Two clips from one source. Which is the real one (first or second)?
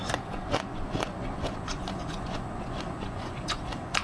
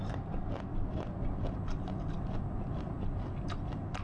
second